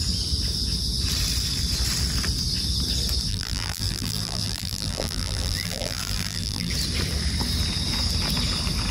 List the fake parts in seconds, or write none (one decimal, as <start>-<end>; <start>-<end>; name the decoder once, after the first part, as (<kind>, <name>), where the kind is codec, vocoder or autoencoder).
3.3-6.7 (vocoder, BigVGAN v2)

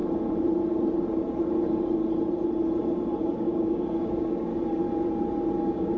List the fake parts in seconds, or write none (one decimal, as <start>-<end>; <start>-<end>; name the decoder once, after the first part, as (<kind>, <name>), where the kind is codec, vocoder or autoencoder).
3.2-4.5 (codec, DAC); 5.6-6.0

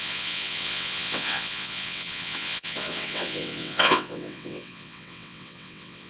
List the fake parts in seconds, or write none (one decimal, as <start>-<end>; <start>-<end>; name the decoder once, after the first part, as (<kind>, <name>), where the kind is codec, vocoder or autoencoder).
0.0-6.1 (vocoder, WaveNeXt)